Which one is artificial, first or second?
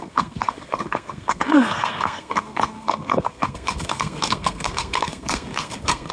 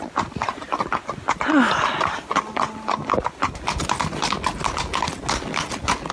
first